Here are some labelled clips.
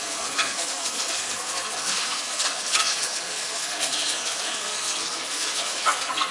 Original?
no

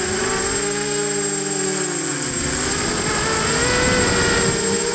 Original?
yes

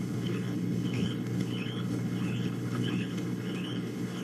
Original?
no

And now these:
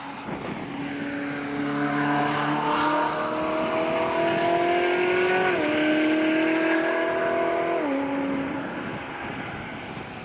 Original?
yes